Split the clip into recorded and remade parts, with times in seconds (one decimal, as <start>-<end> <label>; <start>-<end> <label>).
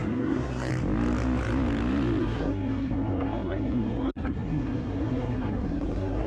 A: 0.0-0.7 remade; 0.7-2.2 recorded; 2.2-6.3 remade